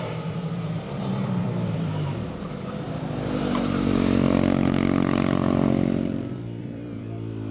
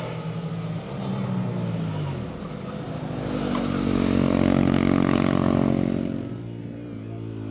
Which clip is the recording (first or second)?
second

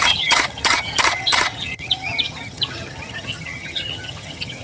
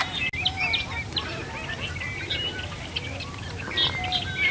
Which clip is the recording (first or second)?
second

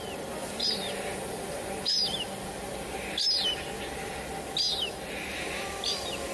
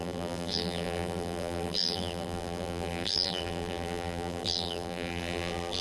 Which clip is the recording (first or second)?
first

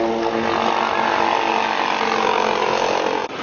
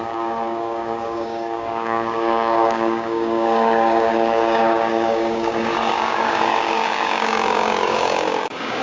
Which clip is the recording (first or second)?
first